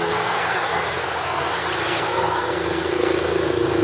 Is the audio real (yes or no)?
no